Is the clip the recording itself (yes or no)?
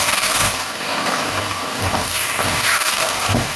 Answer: no